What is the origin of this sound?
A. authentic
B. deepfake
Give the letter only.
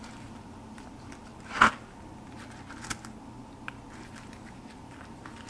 A